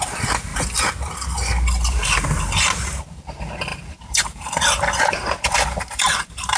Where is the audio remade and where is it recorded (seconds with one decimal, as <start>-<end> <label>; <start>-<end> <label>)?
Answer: 0.0-3.7 recorded; 3.7-6.6 remade